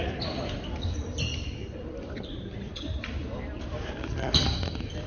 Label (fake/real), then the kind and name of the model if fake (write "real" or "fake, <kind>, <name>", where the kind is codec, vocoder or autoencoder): fake, vocoder, BigVGAN v2